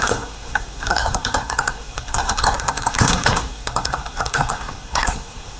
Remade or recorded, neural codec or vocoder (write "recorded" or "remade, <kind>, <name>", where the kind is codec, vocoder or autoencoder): remade, codec, SNAC